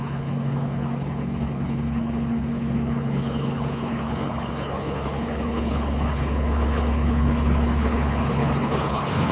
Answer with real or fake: fake